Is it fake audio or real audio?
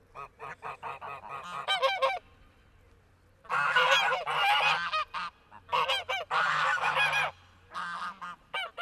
real